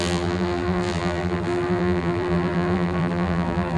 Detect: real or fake fake